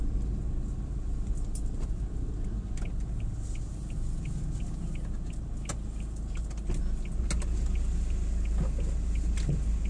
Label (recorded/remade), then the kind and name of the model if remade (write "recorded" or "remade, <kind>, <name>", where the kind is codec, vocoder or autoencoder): recorded